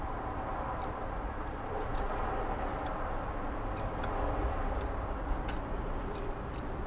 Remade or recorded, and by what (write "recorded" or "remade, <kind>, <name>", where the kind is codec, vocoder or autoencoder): recorded